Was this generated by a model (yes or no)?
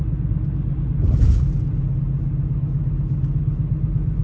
no